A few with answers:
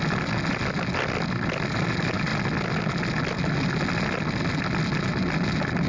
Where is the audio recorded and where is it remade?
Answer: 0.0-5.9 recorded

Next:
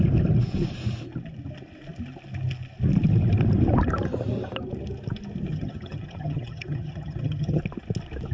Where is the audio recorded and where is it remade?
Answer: 0.0-5.5 recorded; 5.5-7.6 remade; 7.6-8.3 recorded

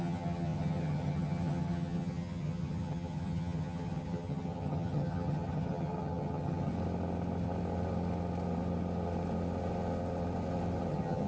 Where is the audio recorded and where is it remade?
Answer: 0.0-6.7 remade; 6.7-10.9 recorded; 10.9-11.3 remade

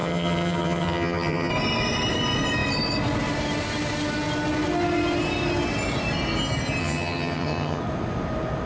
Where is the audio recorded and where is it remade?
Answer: 0.0-1.5 remade; 1.5-6.8 recorded; 6.8-7.8 remade; 7.8-8.7 recorded

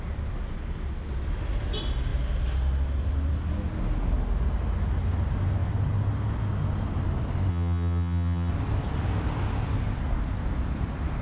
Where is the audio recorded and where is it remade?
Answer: 0.0-7.5 recorded; 7.5-8.5 remade; 8.5-11.2 recorded

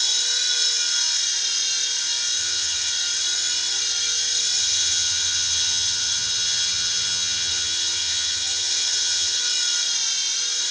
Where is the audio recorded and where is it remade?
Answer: 0.0-2.4 recorded; 2.4-2.9 remade; 2.9-4.6 recorded; 4.6-9.4 remade; 9.4-10.7 recorded